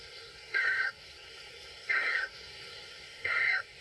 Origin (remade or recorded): remade